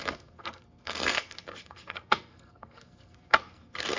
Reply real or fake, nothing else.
fake